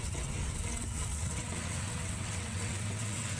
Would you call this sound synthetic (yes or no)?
yes